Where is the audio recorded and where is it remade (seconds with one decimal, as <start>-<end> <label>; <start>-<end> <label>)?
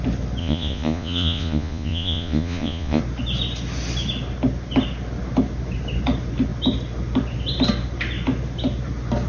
0.0-0.4 recorded; 0.4-3.0 remade; 3.0-9.3 recorded